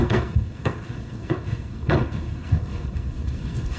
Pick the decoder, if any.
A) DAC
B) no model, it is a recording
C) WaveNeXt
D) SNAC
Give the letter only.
D